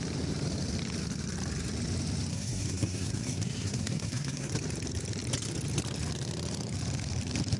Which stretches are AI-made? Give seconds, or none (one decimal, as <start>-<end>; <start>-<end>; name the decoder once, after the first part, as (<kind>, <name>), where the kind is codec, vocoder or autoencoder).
2.3-4.5 (codec, SNAC)